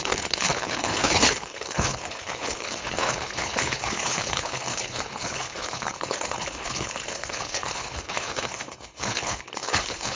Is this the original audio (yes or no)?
no